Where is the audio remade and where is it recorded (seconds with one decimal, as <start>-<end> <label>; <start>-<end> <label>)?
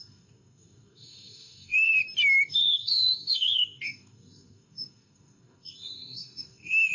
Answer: 0.0-2.0 remade; 2.0-2.5 recorded; 2.5-6.9 remade